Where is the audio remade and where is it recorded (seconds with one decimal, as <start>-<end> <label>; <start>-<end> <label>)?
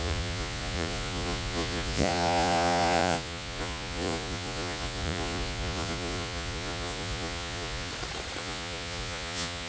0.0-7.9 remade; 7.9-8.4 recorded; 8.4-9.7 remade